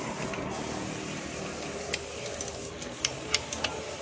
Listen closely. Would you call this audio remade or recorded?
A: recorded